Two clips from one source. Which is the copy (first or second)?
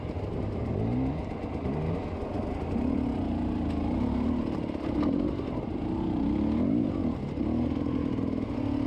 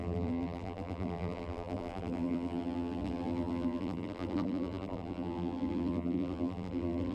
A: second